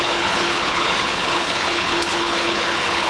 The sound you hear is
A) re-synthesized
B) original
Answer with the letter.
A